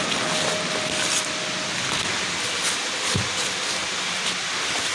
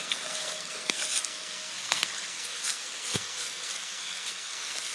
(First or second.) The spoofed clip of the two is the second